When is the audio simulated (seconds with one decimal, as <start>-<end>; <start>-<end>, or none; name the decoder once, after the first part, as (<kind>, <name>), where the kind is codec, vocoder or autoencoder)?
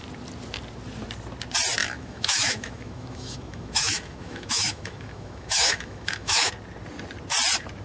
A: 1.8-6.5 (autoencoder, DAC-VAE)